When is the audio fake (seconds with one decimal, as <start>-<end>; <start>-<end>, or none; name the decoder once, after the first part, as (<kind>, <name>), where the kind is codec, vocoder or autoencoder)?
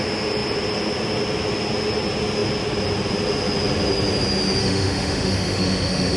4.6-6.2 (autoencoder, DAC-VAE)